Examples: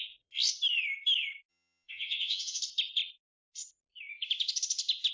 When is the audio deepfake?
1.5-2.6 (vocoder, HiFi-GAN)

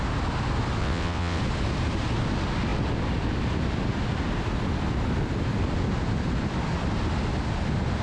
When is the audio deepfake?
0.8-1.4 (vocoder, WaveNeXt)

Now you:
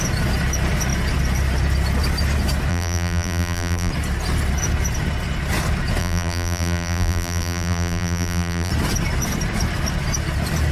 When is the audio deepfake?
2.7-3.9 (vocoder, BigVGAN v2); 6.0-8.7